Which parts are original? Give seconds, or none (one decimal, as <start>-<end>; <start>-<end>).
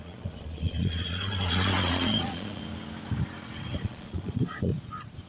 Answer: 2.6-3.8; 4.7-5.3